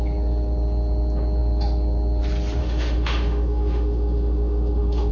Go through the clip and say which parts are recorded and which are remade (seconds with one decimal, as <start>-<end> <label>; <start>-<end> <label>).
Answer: 0.0-2.6 recorded; 2.6-5.1 remade